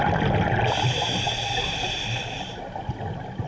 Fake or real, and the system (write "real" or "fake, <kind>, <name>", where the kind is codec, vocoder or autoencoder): real